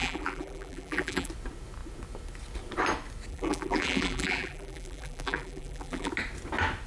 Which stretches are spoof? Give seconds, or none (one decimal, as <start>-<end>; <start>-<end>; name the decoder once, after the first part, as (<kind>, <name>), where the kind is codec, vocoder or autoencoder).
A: 0.0-1.3 (vocoder, BigVGAN v2); 3.3-6.1